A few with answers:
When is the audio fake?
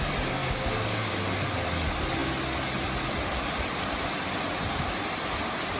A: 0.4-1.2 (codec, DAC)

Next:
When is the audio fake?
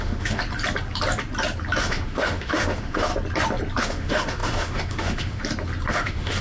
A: 0.0-0.4 (autoencoder, DAC-VAE); 1.8-3.1; 3.8-5.4; 5.9-6.4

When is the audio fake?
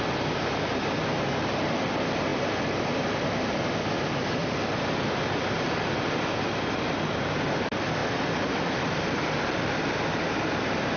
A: 4.4-6.6 (vocoder, BigVGAN v2); 8.0-11.0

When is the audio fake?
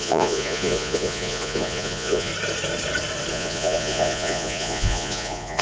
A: 0.0-2.3 (vocoder, Vocos); 3.3-5.6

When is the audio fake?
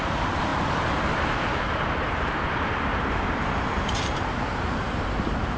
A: 0.0-0.5 (vocoder, BigVGAN v2); 1.1-5.6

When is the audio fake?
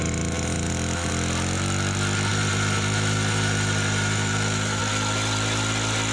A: 2.3-4.8 (vocoder, BigVGAN v2)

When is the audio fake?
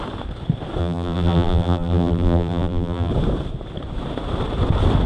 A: 0.8-3.1 (vocoder, BigVGAN v2)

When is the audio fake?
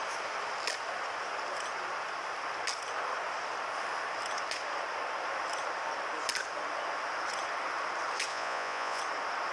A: 8.3-9.0 (vocoder, Vocos)